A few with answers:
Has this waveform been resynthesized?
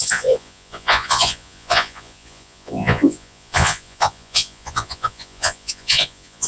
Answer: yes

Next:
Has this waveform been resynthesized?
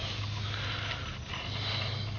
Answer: no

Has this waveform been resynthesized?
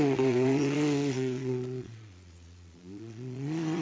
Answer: yes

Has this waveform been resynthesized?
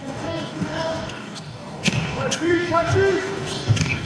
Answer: yes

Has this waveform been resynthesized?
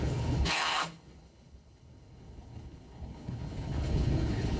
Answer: yes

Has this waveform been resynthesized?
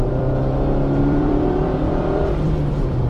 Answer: yes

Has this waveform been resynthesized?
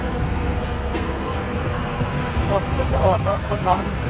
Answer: yes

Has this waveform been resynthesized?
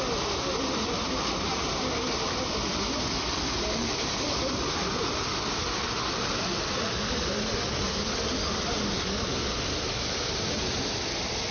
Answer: no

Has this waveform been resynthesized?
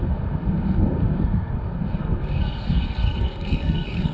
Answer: yes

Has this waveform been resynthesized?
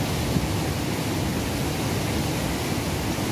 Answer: no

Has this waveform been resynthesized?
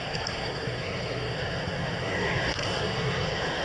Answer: yes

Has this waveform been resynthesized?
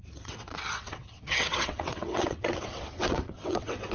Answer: yes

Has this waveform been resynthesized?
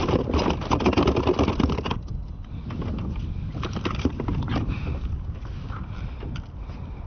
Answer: no